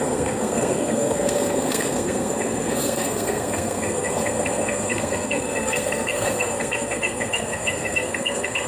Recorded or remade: remade